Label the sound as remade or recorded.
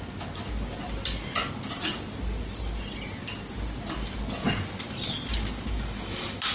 recorded